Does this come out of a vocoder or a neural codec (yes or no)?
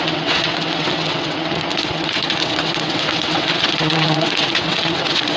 yes